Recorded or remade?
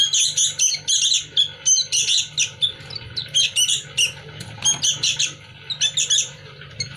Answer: recorded